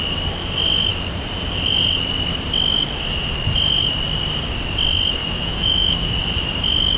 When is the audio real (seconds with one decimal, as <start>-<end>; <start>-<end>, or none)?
0.0-5.2; 6.2-7.0